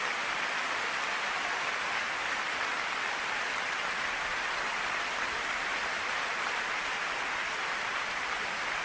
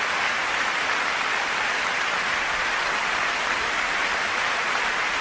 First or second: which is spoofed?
first